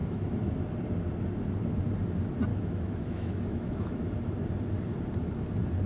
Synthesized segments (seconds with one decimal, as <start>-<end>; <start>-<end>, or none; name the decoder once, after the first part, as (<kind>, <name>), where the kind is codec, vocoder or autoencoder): 0.0-0.5 (autoencoder, DAC-VAE); 2.5-4.0